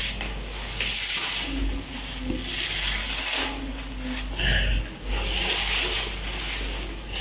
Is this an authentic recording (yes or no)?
yes